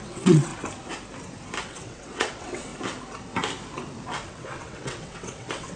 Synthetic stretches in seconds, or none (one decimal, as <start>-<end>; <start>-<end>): 0.0-0.5; 1.6-2.7; 4.3-5.8